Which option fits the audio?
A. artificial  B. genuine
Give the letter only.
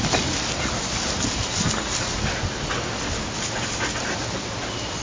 B